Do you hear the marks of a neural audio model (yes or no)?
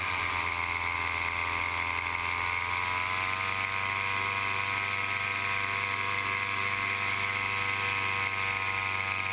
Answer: no